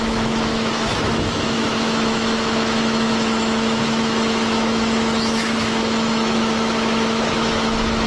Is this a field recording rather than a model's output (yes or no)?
no